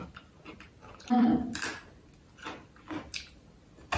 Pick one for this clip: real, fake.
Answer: real